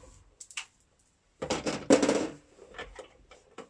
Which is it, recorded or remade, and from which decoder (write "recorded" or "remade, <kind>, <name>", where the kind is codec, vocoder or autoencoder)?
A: remade, vocoder, BigVGAN v2